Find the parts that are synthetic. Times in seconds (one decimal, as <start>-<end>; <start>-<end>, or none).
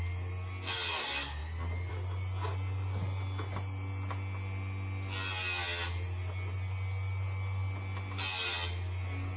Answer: none